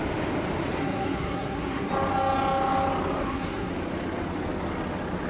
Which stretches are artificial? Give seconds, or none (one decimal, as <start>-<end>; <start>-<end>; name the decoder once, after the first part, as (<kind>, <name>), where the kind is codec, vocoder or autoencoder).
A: 0.8-1.9 (codec, SNAC); 3.2-3.7